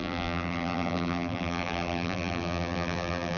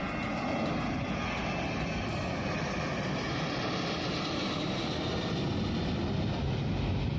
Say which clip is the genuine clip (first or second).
second